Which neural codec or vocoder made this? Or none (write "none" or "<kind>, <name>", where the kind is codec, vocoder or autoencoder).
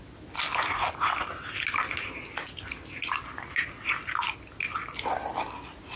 none